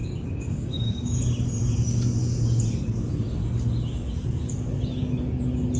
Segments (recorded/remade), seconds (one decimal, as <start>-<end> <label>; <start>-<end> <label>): 0.0-1.2 remade; 1.2-5.8 recorded